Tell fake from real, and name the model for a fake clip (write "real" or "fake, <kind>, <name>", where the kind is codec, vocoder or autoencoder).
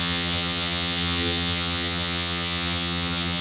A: fake, vocoder, HiFi-GAN